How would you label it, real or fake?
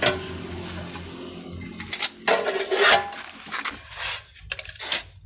real